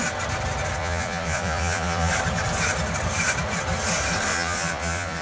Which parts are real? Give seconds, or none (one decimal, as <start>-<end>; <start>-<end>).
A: 0.0-0.8; 2.1-4.3